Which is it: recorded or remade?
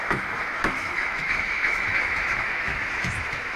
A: remade